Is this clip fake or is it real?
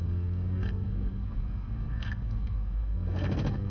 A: fake